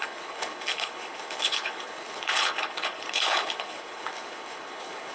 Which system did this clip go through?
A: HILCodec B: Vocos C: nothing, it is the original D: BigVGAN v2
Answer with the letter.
A